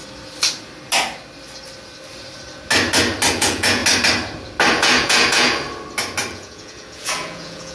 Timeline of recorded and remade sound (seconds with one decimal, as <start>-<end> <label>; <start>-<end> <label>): 0.0-3.3 recorded; 3.3-3.8 remade; 3.8-4.7 recorded; 4.7-5.6 remade; 5.6-6.3 recorded; 6.3-7.7 remade